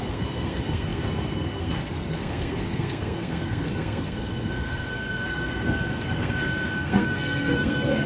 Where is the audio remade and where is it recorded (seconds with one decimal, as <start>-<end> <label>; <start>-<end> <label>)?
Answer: 0.0-8.1 remade